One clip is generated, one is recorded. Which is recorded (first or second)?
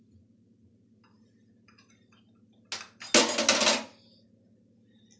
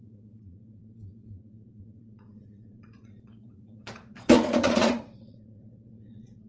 first